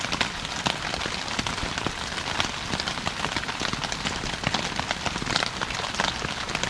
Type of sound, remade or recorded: recorded